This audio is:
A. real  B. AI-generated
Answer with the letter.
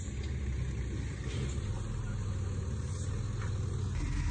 A